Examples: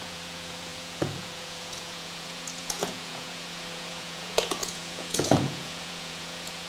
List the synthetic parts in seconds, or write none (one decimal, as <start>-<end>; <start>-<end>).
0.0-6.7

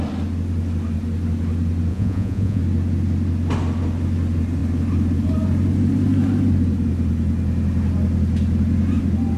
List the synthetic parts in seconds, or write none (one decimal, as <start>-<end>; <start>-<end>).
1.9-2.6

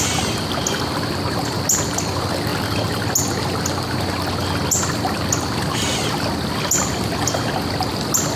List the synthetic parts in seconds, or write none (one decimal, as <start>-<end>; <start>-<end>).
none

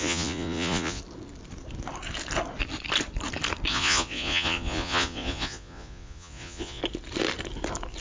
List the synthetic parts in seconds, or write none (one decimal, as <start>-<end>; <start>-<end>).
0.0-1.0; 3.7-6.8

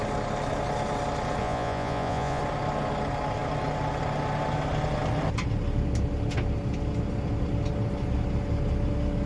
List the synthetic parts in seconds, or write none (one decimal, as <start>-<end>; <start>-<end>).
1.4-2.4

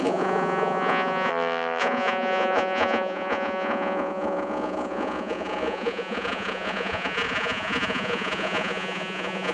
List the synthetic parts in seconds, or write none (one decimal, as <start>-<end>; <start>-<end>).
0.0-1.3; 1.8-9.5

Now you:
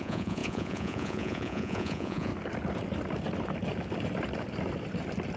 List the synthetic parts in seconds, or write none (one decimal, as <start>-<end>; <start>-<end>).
0.0-2.3